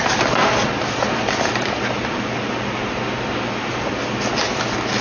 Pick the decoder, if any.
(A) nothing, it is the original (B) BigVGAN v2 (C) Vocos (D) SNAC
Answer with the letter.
A